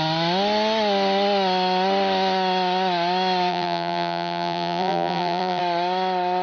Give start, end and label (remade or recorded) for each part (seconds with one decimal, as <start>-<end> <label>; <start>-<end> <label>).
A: 0.0-3.5 recorded; 3.5-5.6 remade; 5.6-6.4 recorded